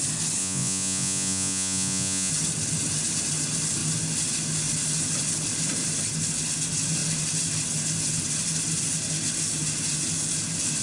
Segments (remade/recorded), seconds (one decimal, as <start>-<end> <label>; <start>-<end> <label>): 0.0-0.4 recorded; 0.4-2.3 remade; 2.3-10.8 recorded